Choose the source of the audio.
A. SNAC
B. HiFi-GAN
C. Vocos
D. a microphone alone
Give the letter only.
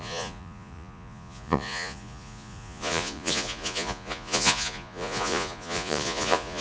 C